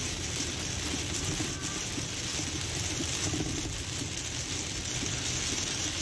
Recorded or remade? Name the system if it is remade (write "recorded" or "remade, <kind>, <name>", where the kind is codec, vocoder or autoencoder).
recorded